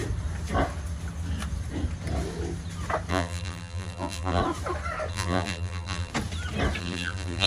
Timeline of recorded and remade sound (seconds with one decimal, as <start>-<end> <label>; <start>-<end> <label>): 0.0-3.1 recorded; 3.1-4.4 remade; 4.4-5.1 recorded; 5.1-6.1 remade; 6.1-6.8 recorded; 6.8-7.5 remade